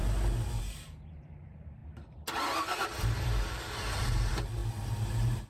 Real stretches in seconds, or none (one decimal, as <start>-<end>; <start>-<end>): 0.0-0.6; 1.8-3.5; 4.6-5.5